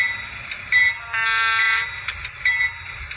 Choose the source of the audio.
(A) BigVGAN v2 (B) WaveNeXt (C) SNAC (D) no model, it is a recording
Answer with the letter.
D